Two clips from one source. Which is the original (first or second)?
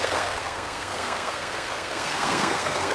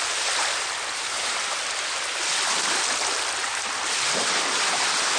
second